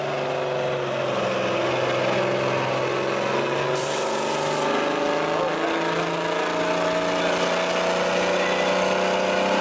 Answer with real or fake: real